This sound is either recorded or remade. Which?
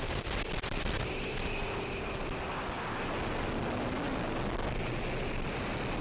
recorded